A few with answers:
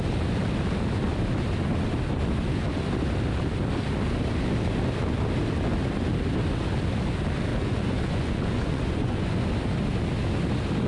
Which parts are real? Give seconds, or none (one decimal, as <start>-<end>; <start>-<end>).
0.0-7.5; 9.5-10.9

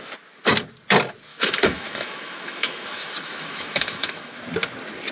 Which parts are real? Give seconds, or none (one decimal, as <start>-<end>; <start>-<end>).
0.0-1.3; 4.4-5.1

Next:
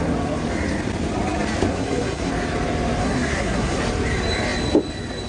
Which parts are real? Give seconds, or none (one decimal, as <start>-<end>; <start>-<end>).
0.0-1.7; 2.3-3.0; 3.8-5.3

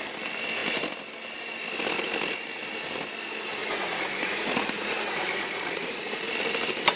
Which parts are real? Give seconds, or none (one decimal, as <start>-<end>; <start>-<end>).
0.0-3.6; 6.3-7.0